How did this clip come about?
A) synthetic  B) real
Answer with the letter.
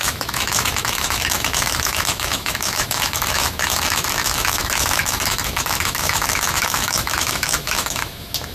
A